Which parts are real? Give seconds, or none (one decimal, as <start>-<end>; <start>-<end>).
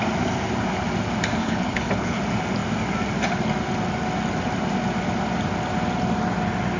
0.0-1.4; 2.2-6.8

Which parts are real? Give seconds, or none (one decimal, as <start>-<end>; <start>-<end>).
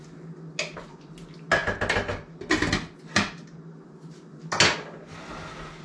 0.0-5.8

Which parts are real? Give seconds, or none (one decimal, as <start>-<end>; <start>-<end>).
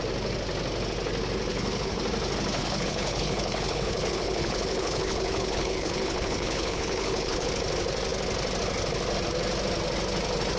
0.0-1.5; 2.0-2.6; 7.5-10.6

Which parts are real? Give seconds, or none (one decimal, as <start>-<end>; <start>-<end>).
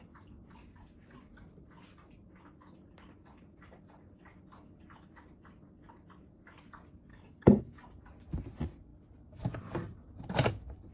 0.0-7.1; 7.6-10.9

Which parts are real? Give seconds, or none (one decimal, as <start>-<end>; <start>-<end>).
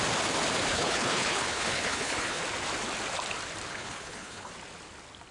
0.0-0.7; 2.4-3.7; 4.5-5.3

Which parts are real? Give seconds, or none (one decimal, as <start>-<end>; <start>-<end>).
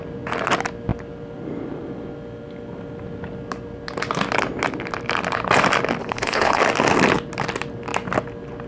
0.0-6.0; 6.6-8.7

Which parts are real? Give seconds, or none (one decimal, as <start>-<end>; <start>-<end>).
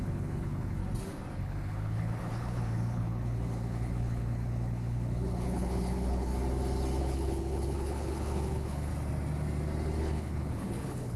0.8-1.4; 6.3-7.0; 8.9-10.0